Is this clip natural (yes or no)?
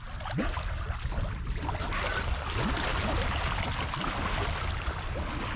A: yes